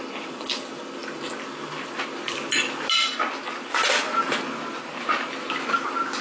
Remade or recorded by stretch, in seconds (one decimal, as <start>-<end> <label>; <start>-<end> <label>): 0.0-6.2 recorded